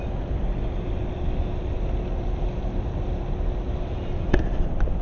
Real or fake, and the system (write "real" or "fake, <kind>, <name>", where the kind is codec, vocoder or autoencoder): real